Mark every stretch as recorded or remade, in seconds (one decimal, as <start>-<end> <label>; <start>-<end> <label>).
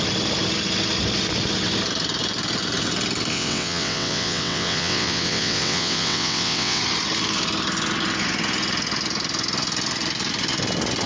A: 0.0-3.3 recorded; 3.3-6.8 remade; 6.8-11.1 recorded